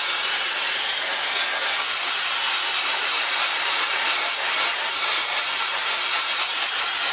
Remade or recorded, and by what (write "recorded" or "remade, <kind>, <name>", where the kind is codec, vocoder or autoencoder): remade, vocoder, BigVGAN v2